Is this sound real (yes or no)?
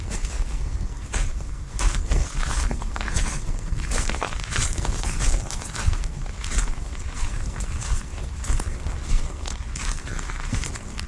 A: no